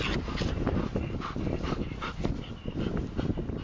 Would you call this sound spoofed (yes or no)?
no